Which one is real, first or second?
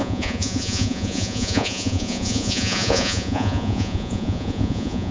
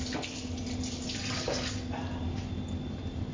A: second